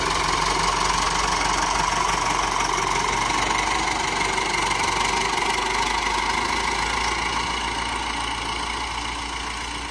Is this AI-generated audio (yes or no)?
no